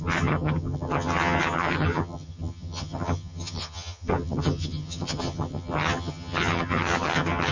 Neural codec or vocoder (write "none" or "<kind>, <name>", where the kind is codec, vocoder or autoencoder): vocoder, HiFi-GAN